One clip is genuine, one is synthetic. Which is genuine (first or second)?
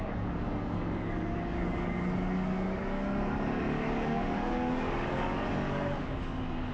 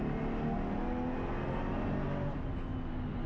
second